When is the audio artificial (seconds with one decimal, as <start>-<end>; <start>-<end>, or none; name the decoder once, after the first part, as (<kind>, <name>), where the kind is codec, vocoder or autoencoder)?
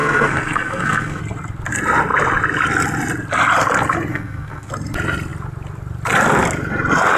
0.0-1.2 (codec, SNAC); 4.1-4.7